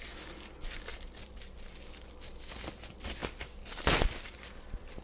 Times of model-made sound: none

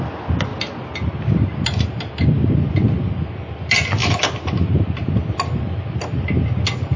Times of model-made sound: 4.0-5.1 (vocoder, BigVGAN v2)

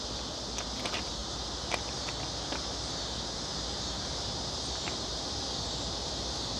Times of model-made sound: 0.0-1.2 (vocoder, BigVGAN v2); 3.5-6.6

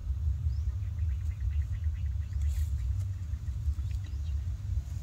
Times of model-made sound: none